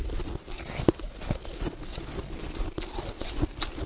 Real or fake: real